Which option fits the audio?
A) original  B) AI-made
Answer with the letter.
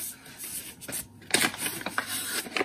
A